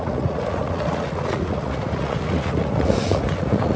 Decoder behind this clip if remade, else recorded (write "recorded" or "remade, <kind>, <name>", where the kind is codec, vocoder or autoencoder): remade, vocoder, Vocos